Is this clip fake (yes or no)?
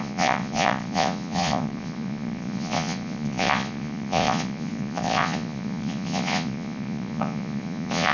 yes